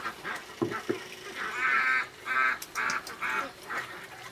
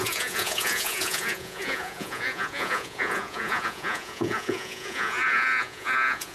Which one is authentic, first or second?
first